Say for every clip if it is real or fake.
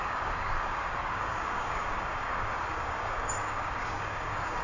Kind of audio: fake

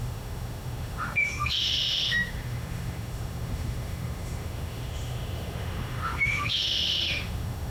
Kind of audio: fake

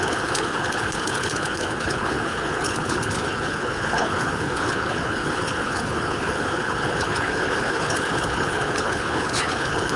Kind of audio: fake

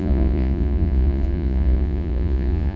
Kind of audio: fake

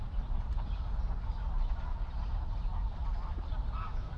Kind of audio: real